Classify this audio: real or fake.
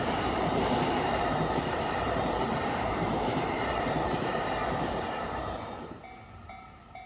fake